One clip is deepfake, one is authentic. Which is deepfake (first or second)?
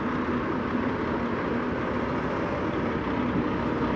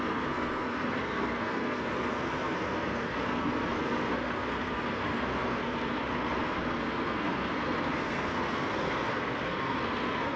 second